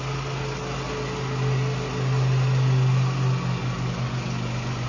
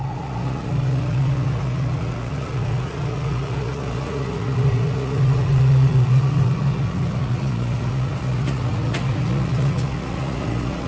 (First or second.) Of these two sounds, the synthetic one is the second